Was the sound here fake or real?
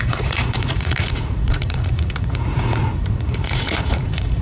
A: fake